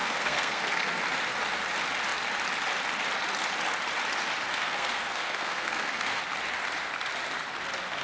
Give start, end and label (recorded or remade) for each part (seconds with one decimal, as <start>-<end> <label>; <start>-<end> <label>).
0.0-1.0 remade; 1.0-4.5 recorded; 4.5-6.2 remade; 6.2-8.0 recorded